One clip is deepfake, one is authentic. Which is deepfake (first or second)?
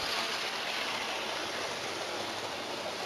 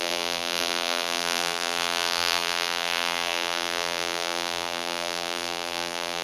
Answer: second